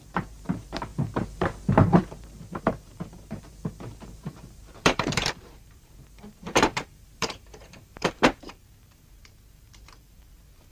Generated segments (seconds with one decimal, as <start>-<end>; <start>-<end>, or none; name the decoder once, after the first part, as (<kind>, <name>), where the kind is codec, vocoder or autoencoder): 0.0-10.7 (vocoder, BigVGAN v2)